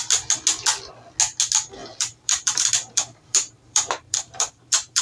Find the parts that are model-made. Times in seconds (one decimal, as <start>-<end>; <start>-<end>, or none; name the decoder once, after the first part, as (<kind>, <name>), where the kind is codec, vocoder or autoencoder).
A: 1.8-5.0 (vocoder, BigVGAN v2)